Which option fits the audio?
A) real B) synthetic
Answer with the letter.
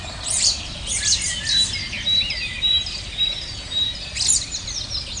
A